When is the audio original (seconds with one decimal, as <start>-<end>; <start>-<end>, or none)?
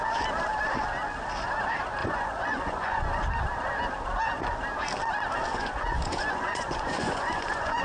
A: 0.0-2.0; 3.2-5.5